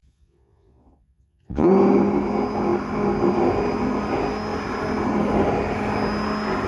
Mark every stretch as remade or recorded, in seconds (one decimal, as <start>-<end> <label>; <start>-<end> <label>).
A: 0.0-1.7 remade; 1.7-6.7 recorded